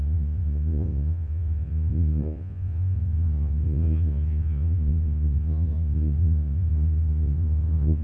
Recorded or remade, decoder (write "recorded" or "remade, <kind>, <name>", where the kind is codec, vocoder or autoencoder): remade, vocoder, Vocos